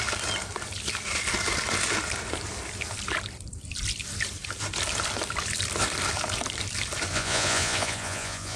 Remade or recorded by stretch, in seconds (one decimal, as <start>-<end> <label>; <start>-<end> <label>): 0.0-7.1 recorded; 7.1-8.6 remade